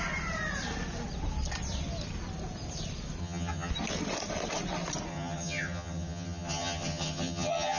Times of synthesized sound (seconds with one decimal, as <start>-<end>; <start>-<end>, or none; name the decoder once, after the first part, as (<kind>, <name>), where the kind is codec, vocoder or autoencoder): 3.2-3.7 (vocoder, HiFi-GAN); 5.1-7.8